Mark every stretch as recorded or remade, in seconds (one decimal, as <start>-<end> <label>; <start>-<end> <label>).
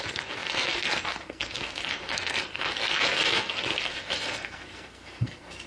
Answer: 0.0-5.7 remade